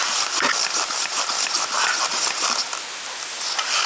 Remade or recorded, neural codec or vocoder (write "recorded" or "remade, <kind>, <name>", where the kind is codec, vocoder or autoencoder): recorded